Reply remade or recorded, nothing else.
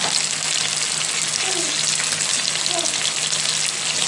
recorded